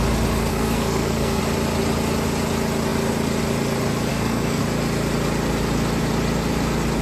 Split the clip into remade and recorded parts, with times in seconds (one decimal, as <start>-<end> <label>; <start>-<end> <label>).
0.0-0.5 recorded; 0.5-1.4 remade; 1.4-4.1 recorded; 4.1-4.6 remade; 4.6-7.0 recorded